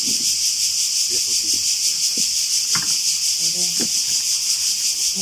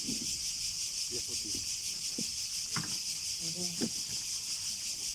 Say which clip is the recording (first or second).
first